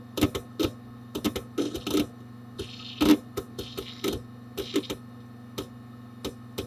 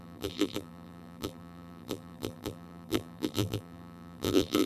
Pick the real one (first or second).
first